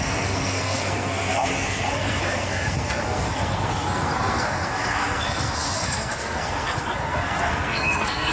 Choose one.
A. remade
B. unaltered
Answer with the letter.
A